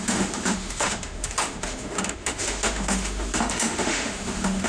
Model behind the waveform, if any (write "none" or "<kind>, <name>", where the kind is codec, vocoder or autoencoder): autoencoder, DAC-VAE